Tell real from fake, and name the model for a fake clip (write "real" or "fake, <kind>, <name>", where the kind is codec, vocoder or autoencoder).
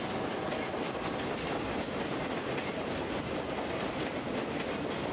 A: real